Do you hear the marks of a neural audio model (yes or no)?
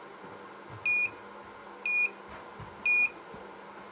no